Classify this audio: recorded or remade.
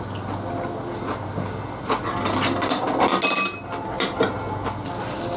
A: recorded